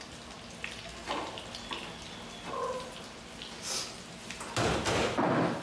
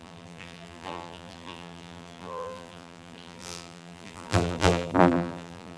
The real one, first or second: first